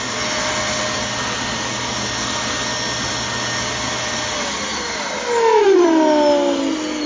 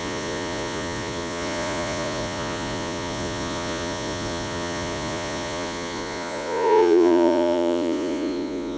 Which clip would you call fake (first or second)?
second